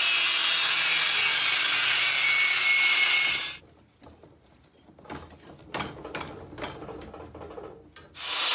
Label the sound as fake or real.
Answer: real